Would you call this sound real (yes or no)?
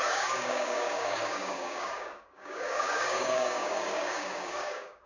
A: no